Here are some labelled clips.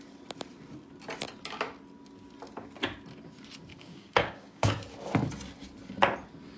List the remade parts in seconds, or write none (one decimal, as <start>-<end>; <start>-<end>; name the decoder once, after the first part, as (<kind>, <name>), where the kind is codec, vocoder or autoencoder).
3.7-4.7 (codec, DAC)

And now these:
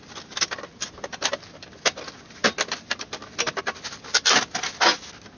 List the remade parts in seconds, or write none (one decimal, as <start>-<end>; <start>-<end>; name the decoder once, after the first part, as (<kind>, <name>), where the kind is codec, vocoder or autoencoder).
none

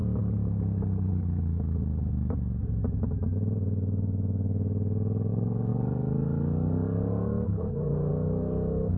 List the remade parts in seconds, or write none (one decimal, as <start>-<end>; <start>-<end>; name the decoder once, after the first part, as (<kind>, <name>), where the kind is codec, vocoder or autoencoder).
1.1-2.8 (codec, DAC); 5.3-9.0